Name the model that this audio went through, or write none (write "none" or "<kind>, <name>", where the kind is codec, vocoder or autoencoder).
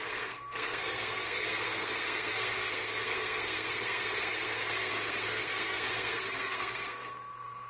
codec, SNAC